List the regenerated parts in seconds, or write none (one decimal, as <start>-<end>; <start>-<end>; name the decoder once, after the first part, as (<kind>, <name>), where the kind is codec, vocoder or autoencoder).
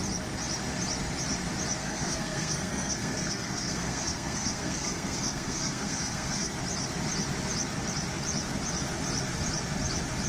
1.8-6.5 (codec, SNAC)